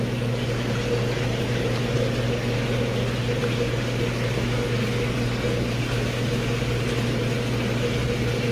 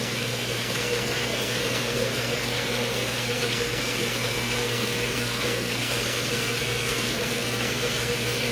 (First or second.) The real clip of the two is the first